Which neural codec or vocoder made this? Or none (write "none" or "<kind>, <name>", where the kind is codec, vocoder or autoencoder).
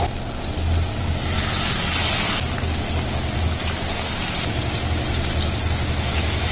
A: none